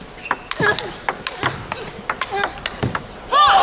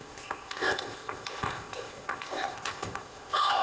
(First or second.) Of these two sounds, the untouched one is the first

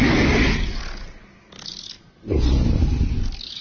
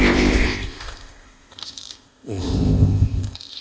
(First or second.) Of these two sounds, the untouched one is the first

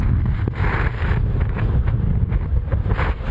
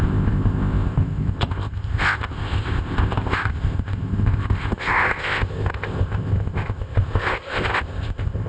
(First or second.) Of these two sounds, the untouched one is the first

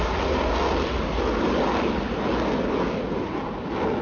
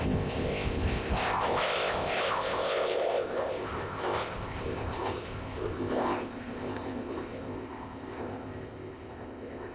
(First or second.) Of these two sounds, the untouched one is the first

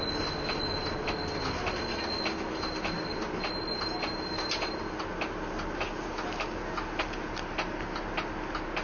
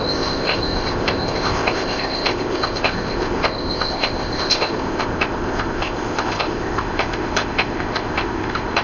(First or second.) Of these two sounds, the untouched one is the first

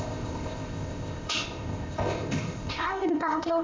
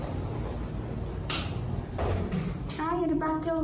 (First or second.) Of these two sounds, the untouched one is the second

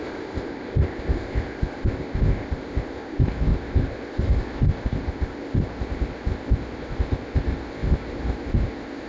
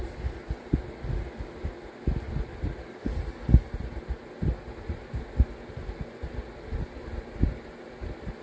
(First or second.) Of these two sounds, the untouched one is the second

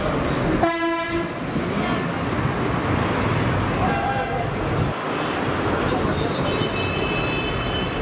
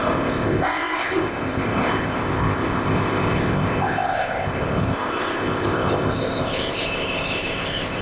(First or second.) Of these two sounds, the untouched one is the first